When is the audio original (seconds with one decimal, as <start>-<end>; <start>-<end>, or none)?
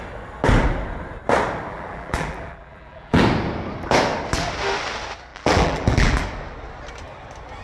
0.0-1.7; 3.2-5.3; 6.2-7.6